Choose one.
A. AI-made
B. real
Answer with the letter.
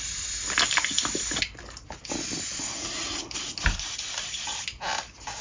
B